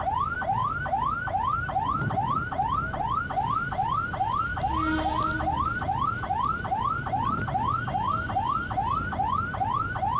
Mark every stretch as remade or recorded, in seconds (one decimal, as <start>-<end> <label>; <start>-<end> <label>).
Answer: 0.0-10.2 recorded